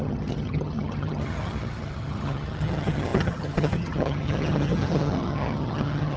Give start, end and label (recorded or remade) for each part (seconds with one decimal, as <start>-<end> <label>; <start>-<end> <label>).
0.0-6.2 remade